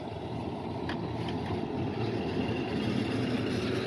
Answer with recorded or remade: recorded